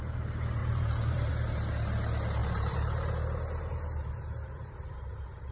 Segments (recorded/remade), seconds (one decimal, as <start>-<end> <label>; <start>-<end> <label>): 0.0-0.6 recorded; 0.6-1.3 remade; 1.3-2.4 recorded; 2.4-3.1 remade; 3.1-4.0 recorded; 4.0-5.5 remade